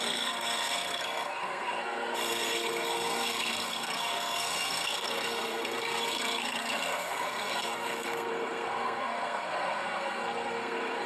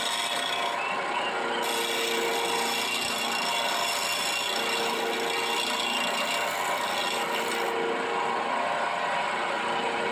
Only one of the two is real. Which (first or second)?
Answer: second